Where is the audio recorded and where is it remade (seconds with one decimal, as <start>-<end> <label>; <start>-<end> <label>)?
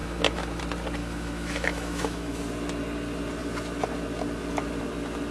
0.0-0.6 remade; 0.6-1.0 recorded; 1.0-2.4 remade; 2.4-5.3 recorded